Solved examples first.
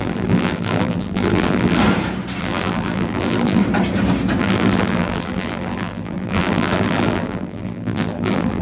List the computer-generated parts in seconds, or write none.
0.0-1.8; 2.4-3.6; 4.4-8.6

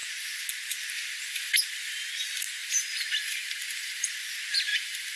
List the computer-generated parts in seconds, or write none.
2.6-4.1; 4.7-5.2

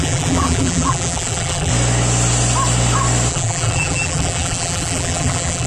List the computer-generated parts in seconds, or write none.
0.0-1.7; 3.3-5.7

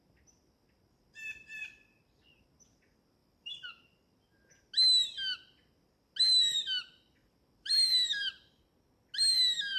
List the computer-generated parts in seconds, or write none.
3.2-3.7; 7.2-8.9